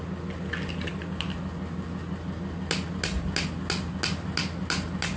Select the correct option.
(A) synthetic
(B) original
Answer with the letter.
B